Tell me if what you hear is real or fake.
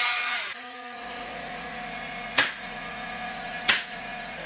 fake